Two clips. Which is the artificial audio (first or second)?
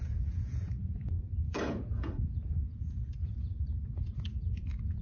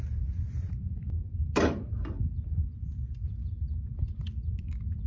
first